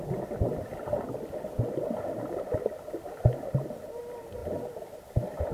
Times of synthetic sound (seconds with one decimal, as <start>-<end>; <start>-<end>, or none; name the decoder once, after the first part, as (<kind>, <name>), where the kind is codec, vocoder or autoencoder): none